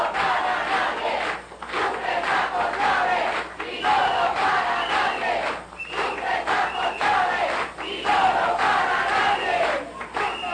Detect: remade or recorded recorded